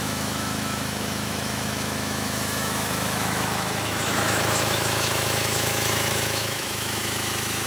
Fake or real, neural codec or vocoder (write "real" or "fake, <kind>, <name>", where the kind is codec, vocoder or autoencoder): fake, autoencoder, DAC-VAE